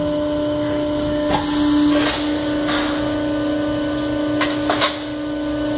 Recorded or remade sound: recorded